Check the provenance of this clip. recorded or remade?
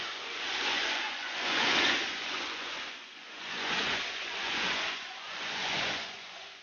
remade